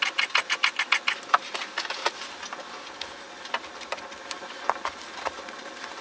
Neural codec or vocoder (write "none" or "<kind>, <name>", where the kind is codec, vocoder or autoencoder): none